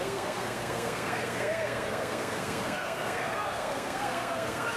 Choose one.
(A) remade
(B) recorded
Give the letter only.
A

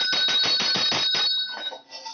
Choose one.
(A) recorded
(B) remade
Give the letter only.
A